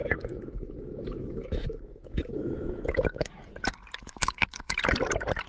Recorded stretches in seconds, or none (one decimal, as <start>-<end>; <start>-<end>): 3.3-4.0; 4.8-5.5